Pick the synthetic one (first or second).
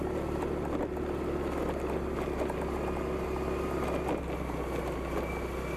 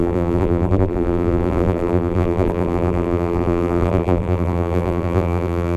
second